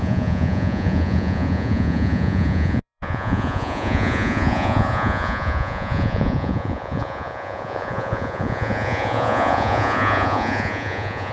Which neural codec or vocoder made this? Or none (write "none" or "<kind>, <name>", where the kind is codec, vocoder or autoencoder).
vocoder, Vocos